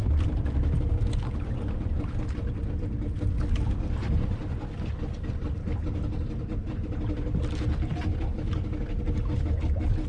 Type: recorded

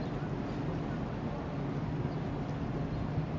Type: recorded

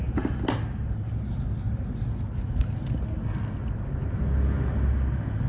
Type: recorded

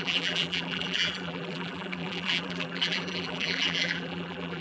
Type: remade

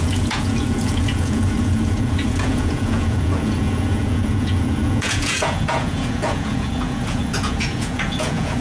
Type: remade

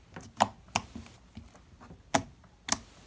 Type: recorded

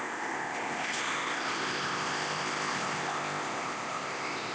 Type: remade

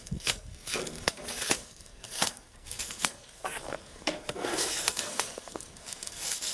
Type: remade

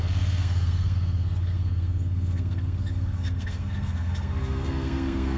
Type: remade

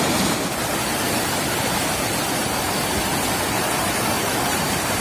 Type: recorded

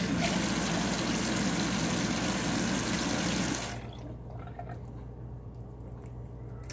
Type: recorded